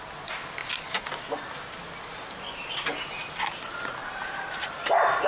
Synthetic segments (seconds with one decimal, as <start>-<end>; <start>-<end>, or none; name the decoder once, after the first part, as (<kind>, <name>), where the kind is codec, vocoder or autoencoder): 4.0-4.7 (vocoder, BigVGAN v2)